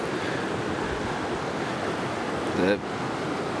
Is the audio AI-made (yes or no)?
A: no